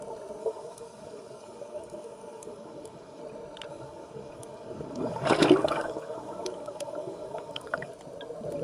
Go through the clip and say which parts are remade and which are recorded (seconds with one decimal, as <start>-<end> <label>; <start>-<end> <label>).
0.0-0.4 recorded; 0.4-3.2 remade; 3.2-3.7 recorded; 3.7-7.9 remade; 7.9-8.6 recorded